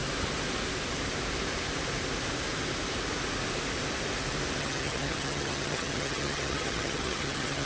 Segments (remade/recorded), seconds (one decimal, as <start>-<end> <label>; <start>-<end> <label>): 0.0-4.6 recorded; 4.6-7.7 remade